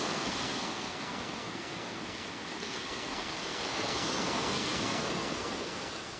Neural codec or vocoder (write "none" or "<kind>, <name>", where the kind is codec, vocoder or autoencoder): codec, SNAC